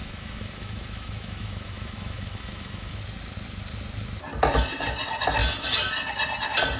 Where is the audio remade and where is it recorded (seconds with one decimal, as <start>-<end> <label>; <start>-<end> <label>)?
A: 0.0-3.0 remade; 3.0-6.8 recorded